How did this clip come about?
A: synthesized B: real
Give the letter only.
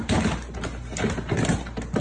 B